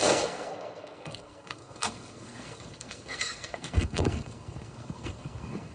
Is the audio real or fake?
fake